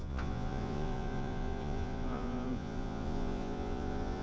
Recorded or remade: remade